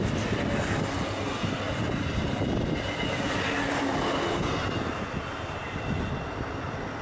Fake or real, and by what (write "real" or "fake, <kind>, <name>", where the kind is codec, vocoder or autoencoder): real